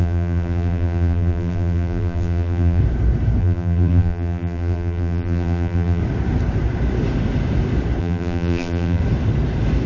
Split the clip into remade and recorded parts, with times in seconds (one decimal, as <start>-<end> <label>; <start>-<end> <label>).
0.0-2.8 remade; 2.8-3.4 recorded; 3.4-6.0 remade; 6.0-8.0 recorded; 8.0-9.0 remade; 9.0-9.9 recorded